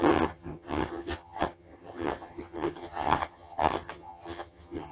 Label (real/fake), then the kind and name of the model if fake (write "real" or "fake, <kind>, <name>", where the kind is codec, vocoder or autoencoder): fake, vocoder, HiFi-GAN